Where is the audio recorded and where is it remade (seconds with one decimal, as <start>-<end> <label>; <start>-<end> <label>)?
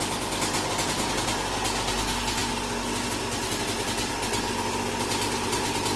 0.0-6.0 recorded